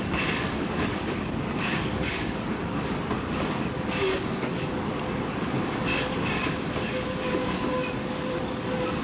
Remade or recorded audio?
remade